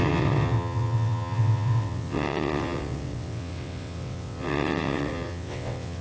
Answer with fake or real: fake